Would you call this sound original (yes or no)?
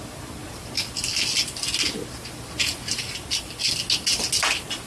yes